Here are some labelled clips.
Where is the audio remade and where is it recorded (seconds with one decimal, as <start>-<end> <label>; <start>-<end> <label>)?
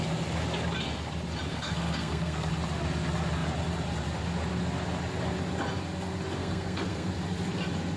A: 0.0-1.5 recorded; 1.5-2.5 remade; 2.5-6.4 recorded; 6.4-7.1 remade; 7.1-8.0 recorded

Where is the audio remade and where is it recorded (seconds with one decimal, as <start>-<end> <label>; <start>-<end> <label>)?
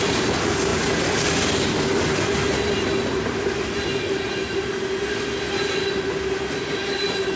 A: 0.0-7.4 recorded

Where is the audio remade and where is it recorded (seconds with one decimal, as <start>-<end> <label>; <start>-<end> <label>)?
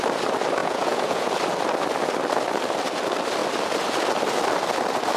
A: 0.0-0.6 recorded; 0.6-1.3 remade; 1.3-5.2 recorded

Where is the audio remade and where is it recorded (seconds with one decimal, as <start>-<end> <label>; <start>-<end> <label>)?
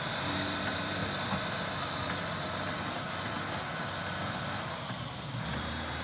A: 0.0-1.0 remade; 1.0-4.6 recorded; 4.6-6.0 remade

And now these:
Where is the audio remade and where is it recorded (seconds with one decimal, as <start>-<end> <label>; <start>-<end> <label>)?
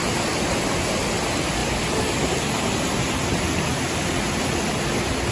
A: 0.0-5.3 recorded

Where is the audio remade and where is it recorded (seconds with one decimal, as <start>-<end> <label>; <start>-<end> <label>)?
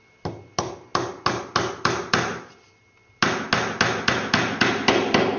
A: 0.0-5.4 recorded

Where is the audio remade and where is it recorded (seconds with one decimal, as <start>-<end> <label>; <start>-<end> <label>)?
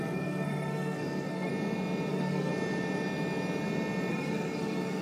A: 0.0-1.5 remade; 1.5-2.1 recorded; 2.1-2.5 remade; 2.5-4.1 recorded; 4.1-5.0 remade